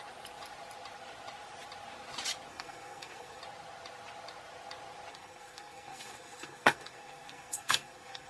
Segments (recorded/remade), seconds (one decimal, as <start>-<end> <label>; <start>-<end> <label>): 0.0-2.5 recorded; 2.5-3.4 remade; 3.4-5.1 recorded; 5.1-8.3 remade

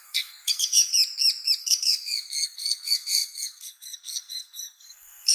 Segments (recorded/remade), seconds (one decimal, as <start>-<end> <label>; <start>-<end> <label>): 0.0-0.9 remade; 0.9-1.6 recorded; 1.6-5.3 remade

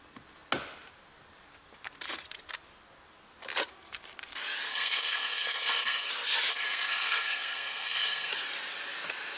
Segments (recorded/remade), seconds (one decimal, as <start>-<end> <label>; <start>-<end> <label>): 0.0-4.7 recorded; 4.7-6.1 remade; 6.1-6.5 recorded; 6.5-8.3 remade; 8.3-9.4 recorded

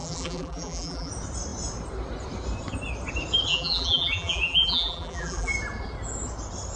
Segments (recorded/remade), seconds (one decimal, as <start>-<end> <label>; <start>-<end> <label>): 0.0-1.1 remade; 1.1-3.5 recorded; 3.5-5.5 remade; 5.5-6.8 recorded

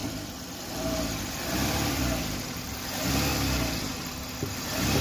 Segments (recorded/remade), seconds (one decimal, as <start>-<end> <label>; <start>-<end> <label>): 0.0-2.7 remade; 2.7-3.3 recorded; 3.3-3.8 remade; 3.8-5.0 recorded

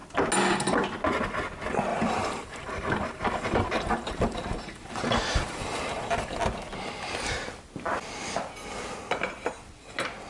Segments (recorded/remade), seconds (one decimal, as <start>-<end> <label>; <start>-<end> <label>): 0.0-1.9 recorded; 1.9-6.4 remade; 6.4-10.3 recorded